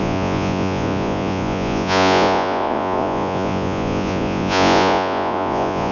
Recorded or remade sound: remade